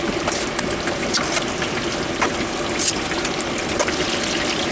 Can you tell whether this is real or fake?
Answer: real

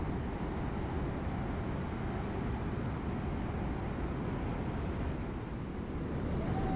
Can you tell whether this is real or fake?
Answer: real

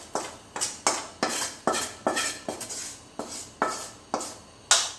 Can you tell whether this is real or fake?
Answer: real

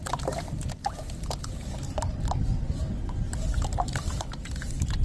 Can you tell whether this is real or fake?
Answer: real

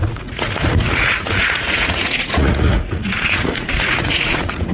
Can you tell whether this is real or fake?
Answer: fake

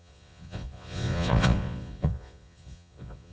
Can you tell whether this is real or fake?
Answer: fake